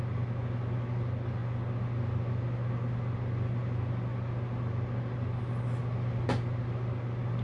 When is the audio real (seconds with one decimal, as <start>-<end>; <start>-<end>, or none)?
0.0-7.4